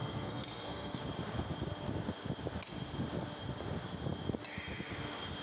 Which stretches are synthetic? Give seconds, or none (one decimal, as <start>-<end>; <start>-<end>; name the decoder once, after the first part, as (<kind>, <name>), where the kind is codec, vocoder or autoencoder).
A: 0.0-1.0 (codec, SNAC)